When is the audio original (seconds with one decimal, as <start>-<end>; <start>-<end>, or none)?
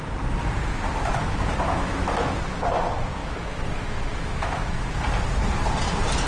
0.0-1.1; 2.4-3.2; 5.0-6.3